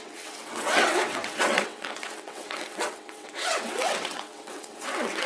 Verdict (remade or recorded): remade